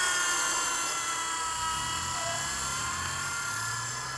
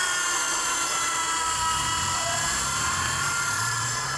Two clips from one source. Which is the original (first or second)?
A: first